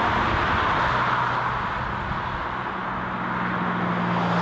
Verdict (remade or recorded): recorded